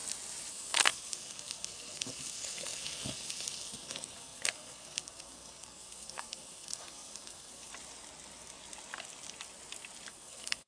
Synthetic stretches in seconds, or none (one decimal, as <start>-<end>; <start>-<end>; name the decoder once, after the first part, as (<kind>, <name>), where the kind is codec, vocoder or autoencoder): 0.5-7.7 (codec, SNAC); 10.1-10.7